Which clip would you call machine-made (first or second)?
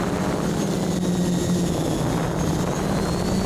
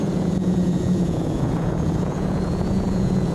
second